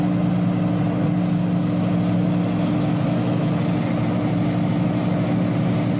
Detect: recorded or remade recorded